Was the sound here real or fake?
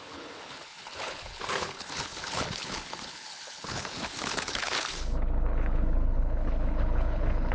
fake